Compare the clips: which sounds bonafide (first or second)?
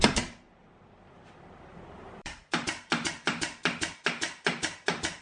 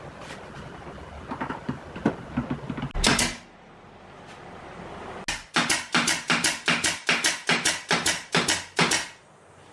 second